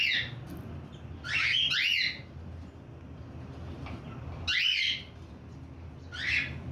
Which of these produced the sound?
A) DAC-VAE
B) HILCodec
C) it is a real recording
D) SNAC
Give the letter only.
C